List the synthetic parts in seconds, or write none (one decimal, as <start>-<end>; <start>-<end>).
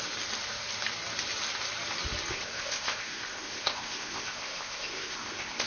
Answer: 2.3-5.7